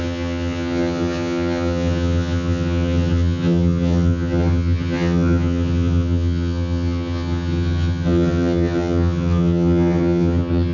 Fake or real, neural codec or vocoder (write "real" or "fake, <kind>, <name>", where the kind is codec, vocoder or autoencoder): fake, vocoder, HiFi-GAN